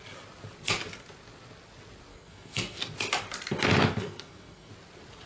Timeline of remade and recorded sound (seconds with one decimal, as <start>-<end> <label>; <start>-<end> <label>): 0.0-2.1 recorded; 2.1-2.8 remade; 2.8-3.9 recorded; 3.9-4.7 remade; 4.7-5.3 recorded